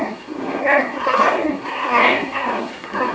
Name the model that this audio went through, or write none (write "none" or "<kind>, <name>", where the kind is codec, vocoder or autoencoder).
codec, SNAC